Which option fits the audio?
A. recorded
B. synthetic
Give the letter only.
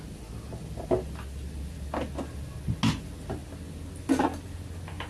A